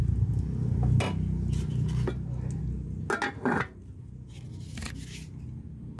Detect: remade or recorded recorded